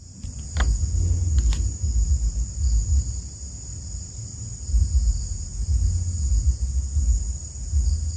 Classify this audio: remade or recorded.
recorded